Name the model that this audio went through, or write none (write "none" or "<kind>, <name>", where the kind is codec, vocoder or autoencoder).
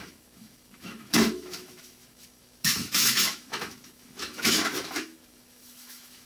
autoencoder, DAC-VAE